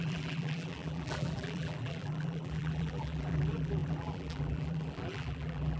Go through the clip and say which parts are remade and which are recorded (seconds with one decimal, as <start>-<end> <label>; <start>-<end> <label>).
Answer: 0.0-5.8 remade